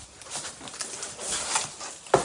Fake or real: real